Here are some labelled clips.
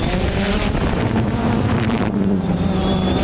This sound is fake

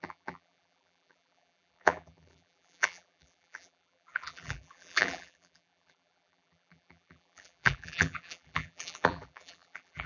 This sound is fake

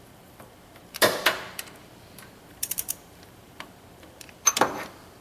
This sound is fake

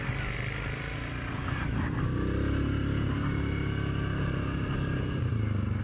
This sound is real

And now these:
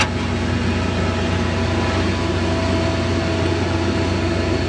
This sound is real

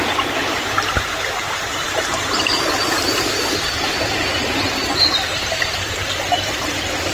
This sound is fake